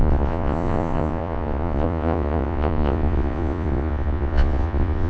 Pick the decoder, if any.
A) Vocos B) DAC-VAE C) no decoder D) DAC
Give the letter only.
A